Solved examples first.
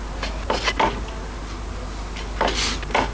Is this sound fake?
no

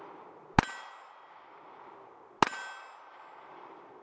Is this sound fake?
no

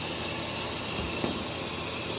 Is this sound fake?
no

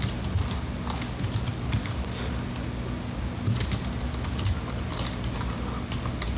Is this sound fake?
no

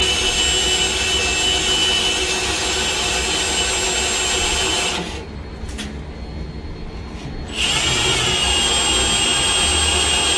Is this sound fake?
no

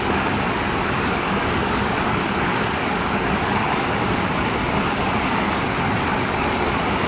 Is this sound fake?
yes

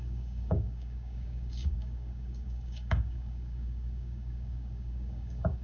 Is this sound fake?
yes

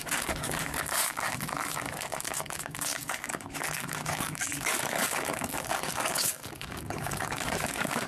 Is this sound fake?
yes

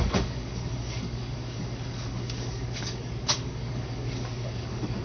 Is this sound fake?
yes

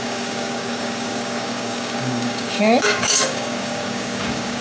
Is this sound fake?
yes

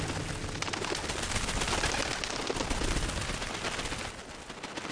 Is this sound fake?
no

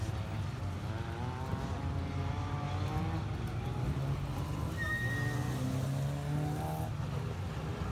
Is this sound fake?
no